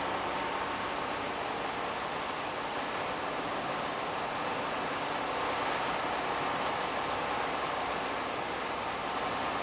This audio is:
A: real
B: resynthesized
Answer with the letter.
A